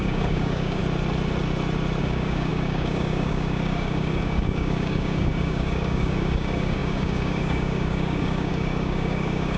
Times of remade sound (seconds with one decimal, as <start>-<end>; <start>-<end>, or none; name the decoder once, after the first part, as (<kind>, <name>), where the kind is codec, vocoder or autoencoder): 0.0-0.8 (codec, DAC); 2.0-9.6